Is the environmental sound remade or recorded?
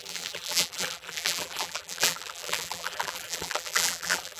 remade